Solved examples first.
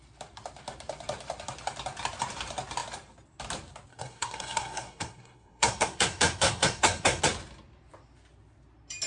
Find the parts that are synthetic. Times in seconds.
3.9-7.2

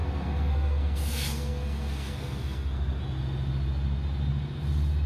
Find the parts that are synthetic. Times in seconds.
0.0-3.0